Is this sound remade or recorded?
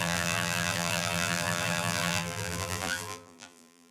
remade